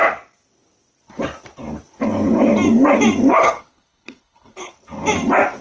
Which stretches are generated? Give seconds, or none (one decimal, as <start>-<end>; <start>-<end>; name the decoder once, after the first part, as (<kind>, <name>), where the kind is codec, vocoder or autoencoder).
3.3-4.7 (codec, HILCodec)

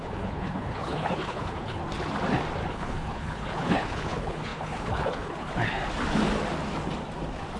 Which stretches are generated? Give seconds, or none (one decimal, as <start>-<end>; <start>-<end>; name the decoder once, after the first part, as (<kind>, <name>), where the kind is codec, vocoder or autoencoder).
0.0-1.8 (codec, HILCodec); 2.7-5.5

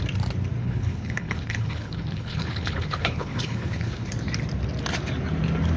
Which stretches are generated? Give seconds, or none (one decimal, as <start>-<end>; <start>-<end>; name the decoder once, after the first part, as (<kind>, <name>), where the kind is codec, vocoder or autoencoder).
0.6-4.1 (codec, HILCodec)

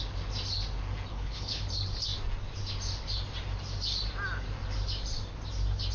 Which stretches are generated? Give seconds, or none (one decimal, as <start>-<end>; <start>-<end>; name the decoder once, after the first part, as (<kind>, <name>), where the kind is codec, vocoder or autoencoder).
1.1-1.6 (codec, HILCodec)

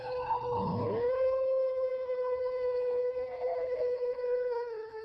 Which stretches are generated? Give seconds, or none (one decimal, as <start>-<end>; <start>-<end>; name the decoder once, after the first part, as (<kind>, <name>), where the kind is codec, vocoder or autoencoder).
0.0-5.0 (codec, HILCodec)

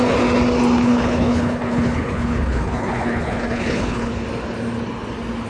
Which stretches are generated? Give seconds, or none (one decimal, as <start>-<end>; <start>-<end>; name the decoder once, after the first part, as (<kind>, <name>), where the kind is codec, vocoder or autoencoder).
0.8-4.1 (codec, HILCodec)

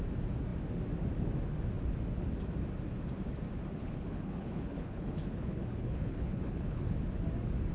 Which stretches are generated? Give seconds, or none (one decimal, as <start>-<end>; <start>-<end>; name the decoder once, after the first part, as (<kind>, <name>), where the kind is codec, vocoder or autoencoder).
3.8-6.8 (codec, HILCodec)

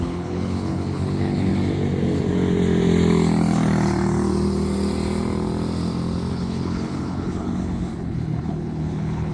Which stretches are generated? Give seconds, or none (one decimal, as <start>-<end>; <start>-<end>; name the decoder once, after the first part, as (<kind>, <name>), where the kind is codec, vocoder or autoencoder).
0.0-1.5 (codec, HILCodec); 6.3-9.3